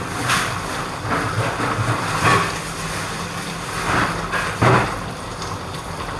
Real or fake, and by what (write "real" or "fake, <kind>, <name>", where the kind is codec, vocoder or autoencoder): real